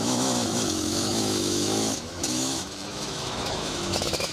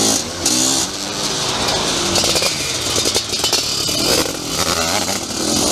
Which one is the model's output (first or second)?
first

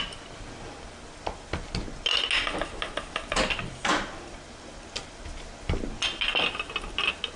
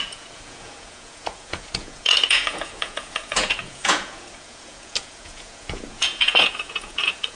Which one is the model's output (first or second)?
second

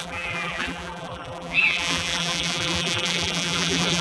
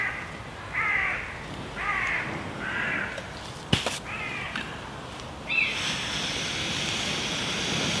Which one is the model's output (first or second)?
first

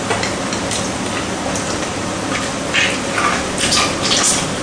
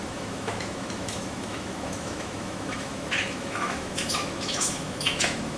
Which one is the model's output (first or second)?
second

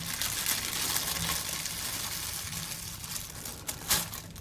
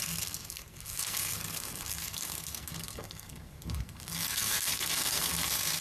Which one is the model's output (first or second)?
second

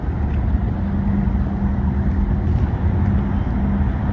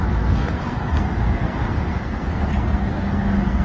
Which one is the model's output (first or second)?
second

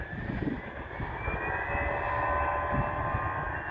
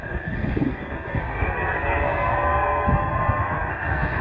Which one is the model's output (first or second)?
second